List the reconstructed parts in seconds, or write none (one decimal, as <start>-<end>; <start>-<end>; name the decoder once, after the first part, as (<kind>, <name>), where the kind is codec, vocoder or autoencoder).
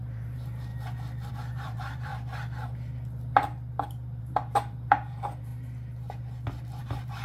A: 0.0-0.7 (vocoder, BigVGAN v2); 1.3-2.1; 4.2-5.5; 6.8-7.2